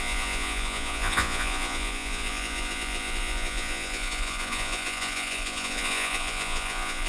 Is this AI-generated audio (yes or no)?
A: yes